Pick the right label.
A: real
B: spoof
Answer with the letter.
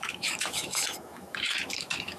B